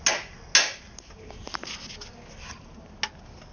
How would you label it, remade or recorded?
recorded